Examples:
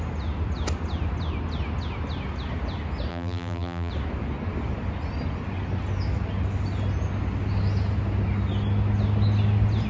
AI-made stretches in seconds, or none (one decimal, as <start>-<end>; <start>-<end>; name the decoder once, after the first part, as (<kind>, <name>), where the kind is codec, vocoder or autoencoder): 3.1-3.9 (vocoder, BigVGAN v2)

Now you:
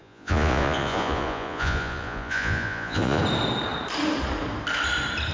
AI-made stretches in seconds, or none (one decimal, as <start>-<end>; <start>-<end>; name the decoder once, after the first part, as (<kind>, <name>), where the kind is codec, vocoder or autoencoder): 0.0-3.2 (vocoder, Vocos)

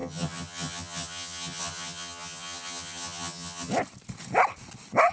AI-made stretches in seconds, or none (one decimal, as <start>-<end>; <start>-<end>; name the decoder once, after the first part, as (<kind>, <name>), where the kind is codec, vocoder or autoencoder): 0.0-3.7 (vocoder, HiFi-GAN)

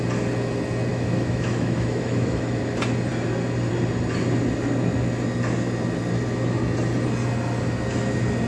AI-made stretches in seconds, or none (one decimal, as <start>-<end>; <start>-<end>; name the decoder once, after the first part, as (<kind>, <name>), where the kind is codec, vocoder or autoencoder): 0.9-2.6 (autoencoder, DAC-VAE)